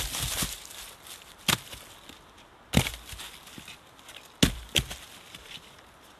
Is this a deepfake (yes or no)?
no